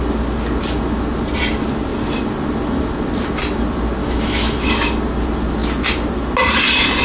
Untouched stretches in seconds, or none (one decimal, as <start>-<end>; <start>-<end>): 0.0-4.0; 4.7-7.0